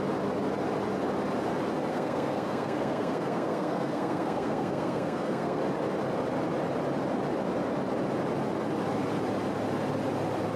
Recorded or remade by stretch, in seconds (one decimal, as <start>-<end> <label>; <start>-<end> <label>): 0.0-1.9 recorded; 1.9-5.6 remade; 5.6-10.6 recorded